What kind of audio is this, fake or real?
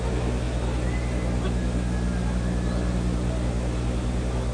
real